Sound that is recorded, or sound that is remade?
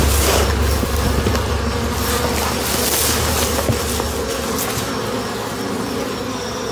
recorded